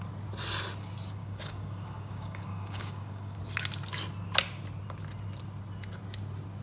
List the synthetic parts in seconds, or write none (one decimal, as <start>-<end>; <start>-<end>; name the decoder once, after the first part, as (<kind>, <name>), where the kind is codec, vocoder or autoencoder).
1.2-3.4 (codec, DAC)